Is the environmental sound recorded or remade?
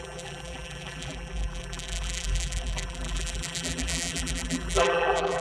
remade